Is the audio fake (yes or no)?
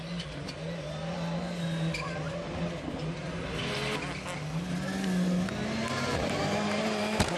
no